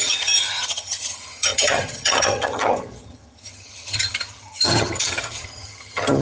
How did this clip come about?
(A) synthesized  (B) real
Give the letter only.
A